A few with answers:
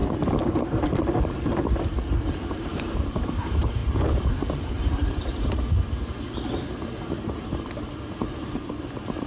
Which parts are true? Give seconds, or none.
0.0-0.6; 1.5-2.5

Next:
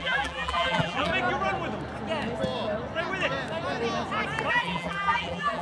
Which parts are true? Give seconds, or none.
1.1-4.5

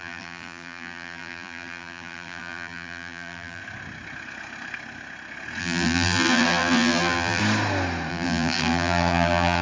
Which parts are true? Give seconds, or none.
3.6-5.6; 7.4-8.1

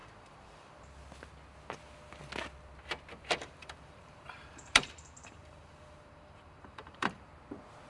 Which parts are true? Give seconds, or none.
0.8-3.4; 7.3-7.9